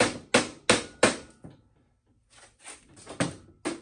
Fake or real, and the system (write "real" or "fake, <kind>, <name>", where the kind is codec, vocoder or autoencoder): real